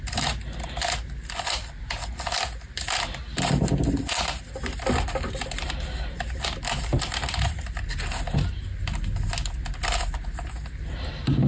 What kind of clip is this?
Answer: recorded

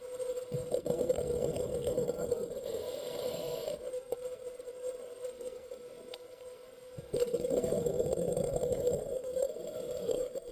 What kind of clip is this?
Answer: remade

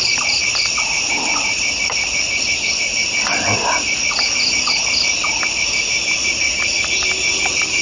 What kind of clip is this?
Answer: remade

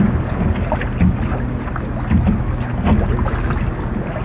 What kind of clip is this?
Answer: recorded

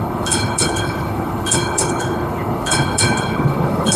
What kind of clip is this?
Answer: remade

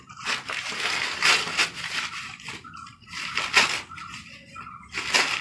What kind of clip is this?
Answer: recorded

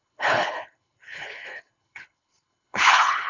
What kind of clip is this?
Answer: remade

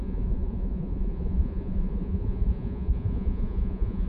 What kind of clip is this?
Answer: remade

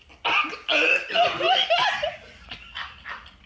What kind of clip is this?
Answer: recorded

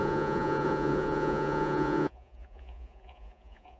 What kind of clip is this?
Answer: remade